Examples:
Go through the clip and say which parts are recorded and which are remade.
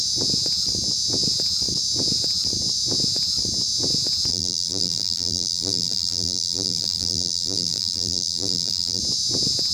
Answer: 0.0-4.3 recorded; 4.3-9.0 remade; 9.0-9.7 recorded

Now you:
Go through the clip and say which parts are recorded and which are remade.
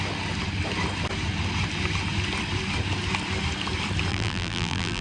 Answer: 0.0-4.1 recorded; 4.1-5.0 remade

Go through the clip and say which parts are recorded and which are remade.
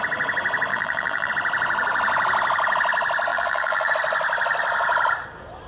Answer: 0.0-0.7 recorded; 0.7-1.3 remade; 1.3-3.3 recorded; 3.3-3.9 remade; 3.9-5.7 recorded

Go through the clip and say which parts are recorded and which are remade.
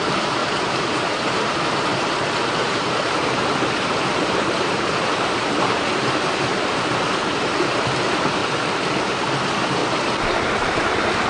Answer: 0.0-8.4 remade; 8.4-9.4 recorded; 9.4-9.8 remade; 9.8-10.5 recorded; 10.5-11.3 remade